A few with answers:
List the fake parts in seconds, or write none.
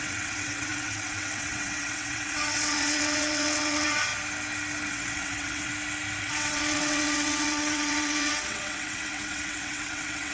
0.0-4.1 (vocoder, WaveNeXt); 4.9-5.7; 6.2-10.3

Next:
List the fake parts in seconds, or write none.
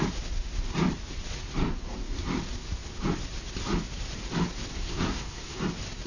4.7-5.6 (codec, SNAC)